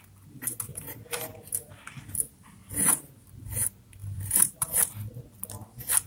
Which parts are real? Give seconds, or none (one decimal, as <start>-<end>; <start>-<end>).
0.0-0.7; 1.7-2.6; 3.5-4.0; 4.7-6.1